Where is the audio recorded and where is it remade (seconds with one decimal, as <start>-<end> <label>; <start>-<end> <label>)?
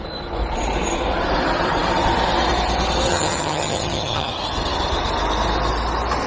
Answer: 0.0-3.1 recorded; 3.1-4.3 remade; 4.3-6.3 recorded